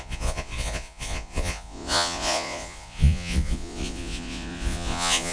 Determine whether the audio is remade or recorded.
remade